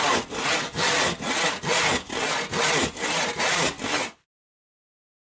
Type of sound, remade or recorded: recorded